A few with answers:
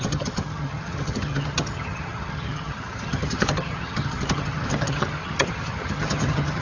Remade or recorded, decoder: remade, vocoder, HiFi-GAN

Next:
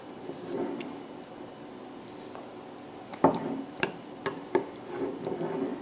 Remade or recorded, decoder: recorded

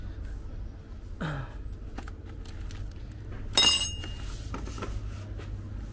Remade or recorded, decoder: recorded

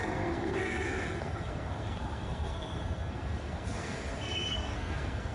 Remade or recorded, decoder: remade, codec, SNAC